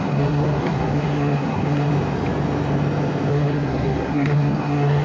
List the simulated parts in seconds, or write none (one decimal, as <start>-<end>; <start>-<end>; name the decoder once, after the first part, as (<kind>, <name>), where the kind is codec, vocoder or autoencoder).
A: 0.0-1.9 (codec, SNAC); 3.3-5.0